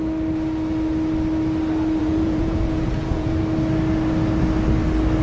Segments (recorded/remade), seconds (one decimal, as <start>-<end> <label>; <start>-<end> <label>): 0.0-2.0 recorded; 2.0-3.4 remade; 3.4-5.2 recorded